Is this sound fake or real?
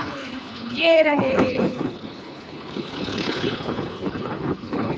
fake